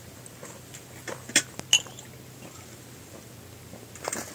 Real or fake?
real